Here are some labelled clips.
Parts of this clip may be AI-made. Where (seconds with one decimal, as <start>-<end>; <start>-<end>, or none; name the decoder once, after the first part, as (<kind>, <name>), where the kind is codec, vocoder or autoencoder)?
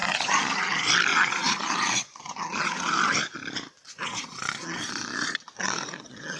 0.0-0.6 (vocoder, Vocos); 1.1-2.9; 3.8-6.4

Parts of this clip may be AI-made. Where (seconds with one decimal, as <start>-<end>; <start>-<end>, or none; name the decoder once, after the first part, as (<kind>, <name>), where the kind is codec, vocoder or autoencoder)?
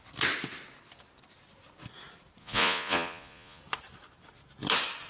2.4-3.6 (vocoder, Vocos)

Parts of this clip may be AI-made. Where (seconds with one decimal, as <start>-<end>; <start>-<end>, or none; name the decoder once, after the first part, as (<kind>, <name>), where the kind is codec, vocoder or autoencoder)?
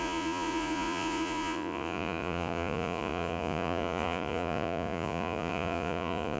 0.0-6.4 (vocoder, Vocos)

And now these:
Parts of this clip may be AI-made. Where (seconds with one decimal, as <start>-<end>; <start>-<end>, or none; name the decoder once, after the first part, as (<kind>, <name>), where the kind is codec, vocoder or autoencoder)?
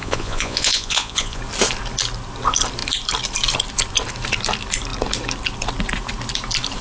0.0-1.4 (vocoder, Vocos)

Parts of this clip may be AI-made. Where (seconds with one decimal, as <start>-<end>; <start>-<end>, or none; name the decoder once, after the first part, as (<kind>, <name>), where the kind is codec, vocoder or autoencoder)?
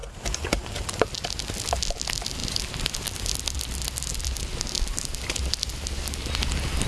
none